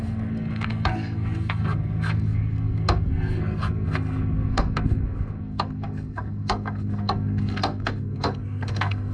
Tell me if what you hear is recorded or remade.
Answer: remade